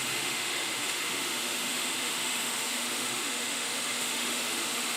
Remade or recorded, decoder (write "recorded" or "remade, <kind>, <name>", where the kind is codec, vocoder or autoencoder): remade, autoencoder, DAC-VAE